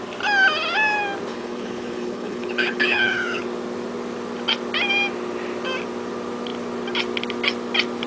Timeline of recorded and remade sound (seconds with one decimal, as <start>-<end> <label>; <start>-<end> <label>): 0.0-1.3 recorded; 1.3-3.4 remade; 3.4-8.1 recorded